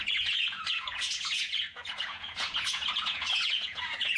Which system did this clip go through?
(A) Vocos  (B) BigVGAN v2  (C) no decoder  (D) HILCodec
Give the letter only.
A